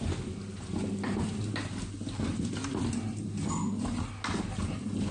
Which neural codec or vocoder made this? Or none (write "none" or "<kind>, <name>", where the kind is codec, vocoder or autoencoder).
none